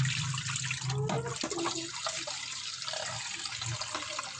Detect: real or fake real